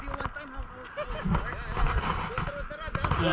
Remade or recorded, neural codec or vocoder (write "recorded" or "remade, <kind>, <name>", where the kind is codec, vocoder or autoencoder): recorded